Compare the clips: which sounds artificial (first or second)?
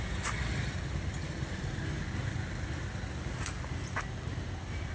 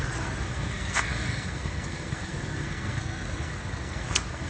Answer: second